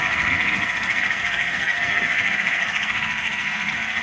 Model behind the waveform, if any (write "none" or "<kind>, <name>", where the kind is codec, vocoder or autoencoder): codec, SNAC